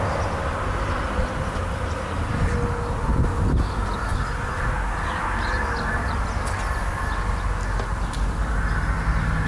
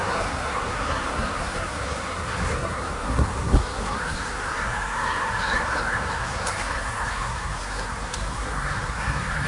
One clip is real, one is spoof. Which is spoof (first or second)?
second